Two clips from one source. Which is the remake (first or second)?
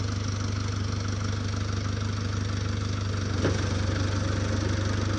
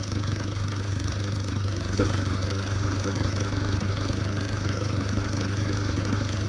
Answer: second